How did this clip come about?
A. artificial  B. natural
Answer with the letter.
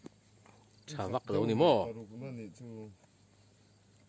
B